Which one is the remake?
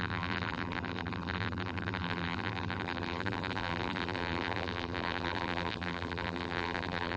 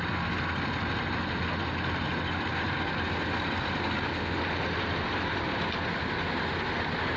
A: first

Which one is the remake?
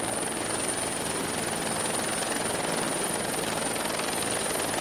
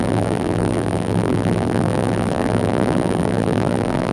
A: second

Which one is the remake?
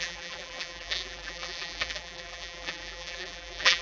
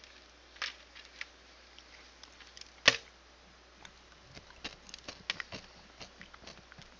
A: first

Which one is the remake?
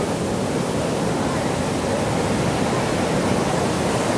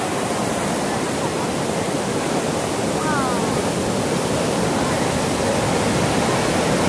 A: second